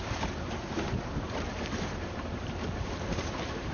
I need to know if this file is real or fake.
fake